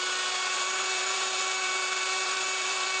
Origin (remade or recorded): remade